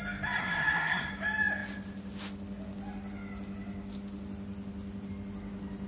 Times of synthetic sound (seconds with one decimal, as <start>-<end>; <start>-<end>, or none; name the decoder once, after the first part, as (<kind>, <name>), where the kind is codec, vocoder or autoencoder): 0.4-1.1 (codec, SNAC)